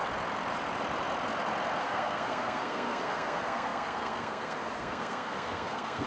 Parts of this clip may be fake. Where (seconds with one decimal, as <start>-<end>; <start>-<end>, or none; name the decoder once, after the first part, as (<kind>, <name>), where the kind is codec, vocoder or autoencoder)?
1.8-6.1 (codec, SNAC)